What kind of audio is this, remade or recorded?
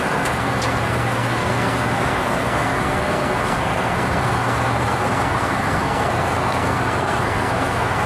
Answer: remade